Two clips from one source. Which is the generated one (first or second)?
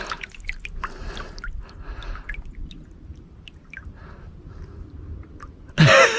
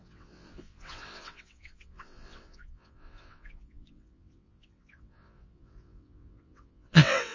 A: second